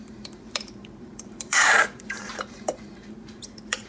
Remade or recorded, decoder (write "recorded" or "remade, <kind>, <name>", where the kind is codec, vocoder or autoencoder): remade, vocoder, BigVGAN v2